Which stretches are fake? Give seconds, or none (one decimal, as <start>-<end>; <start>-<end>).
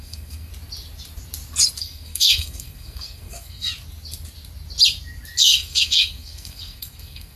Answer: 0.0-0.5; 1.8-3.7; 5.4-7.4